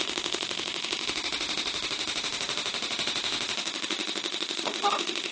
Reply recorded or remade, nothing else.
remade